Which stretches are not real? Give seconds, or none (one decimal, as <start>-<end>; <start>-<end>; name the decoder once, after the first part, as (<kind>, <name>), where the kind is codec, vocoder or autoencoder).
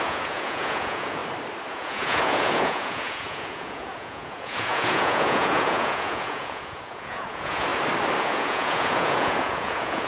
0.0-1.2 (vocoder, Vocos); 1.7-7.7; 8.2-10.1